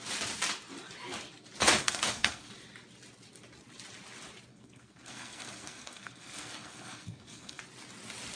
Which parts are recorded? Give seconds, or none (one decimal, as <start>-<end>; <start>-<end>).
0.0-1.8; 2.5-4.5; 7.6-8.4